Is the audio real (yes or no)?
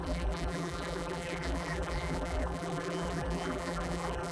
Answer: no